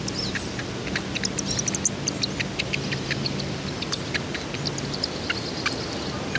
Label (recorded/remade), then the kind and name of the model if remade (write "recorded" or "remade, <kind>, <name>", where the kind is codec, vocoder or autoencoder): recorded